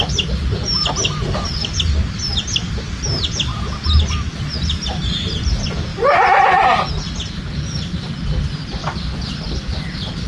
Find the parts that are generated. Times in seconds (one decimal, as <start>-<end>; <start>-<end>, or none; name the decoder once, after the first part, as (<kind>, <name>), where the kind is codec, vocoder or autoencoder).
0.0-3.5 (vocoder, BigVGAN v2); 4.4-8.8